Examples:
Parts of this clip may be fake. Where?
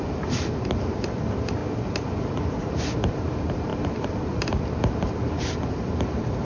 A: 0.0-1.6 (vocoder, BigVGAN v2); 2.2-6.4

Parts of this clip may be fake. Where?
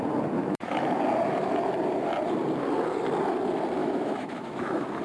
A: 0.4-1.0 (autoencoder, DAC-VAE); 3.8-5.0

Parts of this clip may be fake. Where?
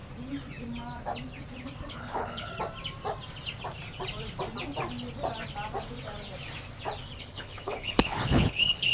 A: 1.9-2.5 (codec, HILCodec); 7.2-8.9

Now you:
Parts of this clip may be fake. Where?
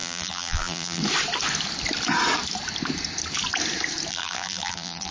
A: 0.0-1.0 (vocoder, BigVGAN v2); 4.1-5.1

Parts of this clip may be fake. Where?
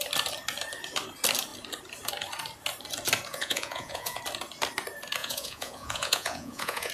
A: 3.3-4.2 (vocoder, Vocos); 5.2-6.9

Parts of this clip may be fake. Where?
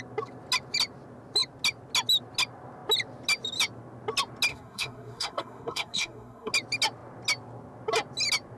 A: 4.5-6.5 (codec, SNAC)